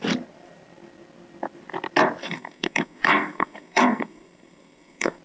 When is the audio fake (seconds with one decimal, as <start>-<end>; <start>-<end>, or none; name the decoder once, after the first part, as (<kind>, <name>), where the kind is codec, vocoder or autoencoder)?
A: 2.2-5.2 (codec, SNAC)